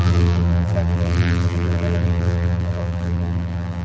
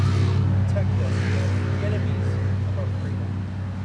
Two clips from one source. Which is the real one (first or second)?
second